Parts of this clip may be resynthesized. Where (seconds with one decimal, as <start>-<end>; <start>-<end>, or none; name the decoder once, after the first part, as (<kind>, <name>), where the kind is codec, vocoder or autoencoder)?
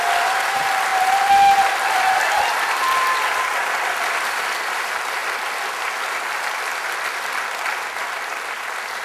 none